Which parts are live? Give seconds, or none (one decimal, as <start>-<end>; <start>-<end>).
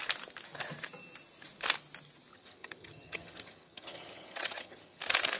0.0-2.3; 5.0-5.4